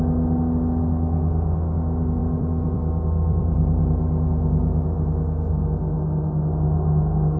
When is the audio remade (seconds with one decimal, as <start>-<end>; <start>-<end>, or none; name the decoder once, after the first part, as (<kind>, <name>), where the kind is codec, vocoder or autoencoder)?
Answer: 2.2-3.8 (vocoder, BigVGAN v2)